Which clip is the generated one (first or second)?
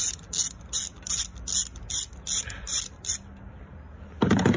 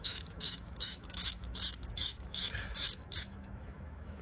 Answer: second